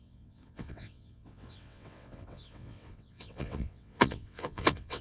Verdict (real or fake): fake